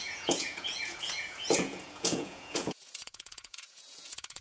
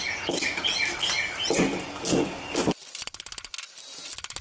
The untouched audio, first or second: second